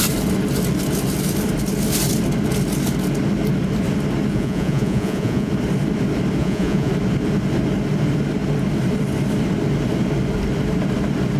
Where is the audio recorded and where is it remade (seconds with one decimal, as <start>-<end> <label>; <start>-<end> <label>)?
0.0-4.3 recorded; 4.3-5.5 remade; 5.5-6.4 recorded; 6.4-6.9 remade; 6.9-11.4 recorded